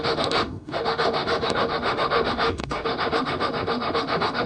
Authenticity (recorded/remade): remade